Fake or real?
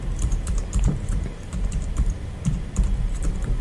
fake